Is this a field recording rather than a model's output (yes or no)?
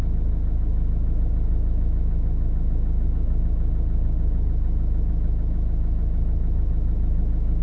yes